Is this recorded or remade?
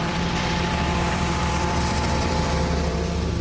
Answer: remade